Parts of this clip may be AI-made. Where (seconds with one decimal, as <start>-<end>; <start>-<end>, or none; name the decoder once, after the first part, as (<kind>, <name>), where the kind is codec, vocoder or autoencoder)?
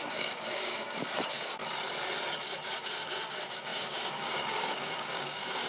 0.0-1.6 (codec, DAC); 2.4-5.7